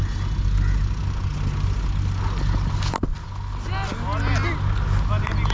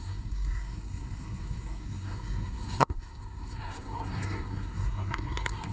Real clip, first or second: first